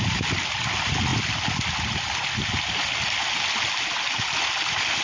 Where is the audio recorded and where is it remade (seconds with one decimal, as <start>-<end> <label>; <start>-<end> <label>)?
0.0-5.0 recorded